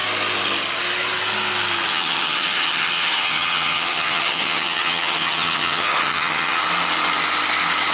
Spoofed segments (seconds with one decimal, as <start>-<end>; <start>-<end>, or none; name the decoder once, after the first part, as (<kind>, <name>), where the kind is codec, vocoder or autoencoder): 1.9-6.6 (vocoder, HiFi-GAN)